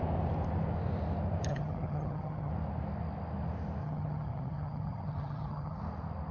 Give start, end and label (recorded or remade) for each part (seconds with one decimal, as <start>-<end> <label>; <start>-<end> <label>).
0.0-1.5 recorded; 1.5-2.5 remade; 2.5-3.8 recorded; 3.8-5.8 remade; 5.8-6.3 recorded